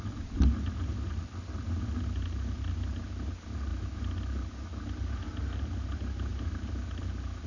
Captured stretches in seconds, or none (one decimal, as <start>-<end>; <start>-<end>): 0.0-7.5

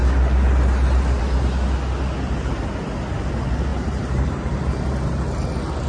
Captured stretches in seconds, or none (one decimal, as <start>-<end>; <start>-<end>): 0.0-3.7; 4.6-5.9

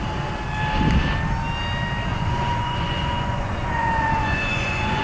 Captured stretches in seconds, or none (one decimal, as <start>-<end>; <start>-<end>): 0.0-2.1